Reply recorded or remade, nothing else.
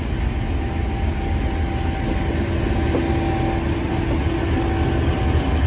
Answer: recorded